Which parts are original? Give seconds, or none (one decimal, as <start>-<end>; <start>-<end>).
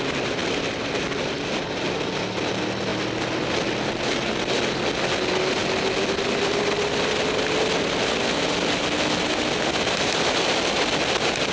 0.0-11.5